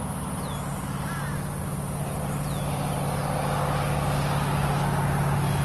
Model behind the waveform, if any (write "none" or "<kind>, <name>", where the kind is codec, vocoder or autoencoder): none